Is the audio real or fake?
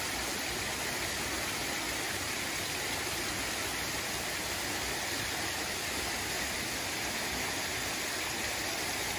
real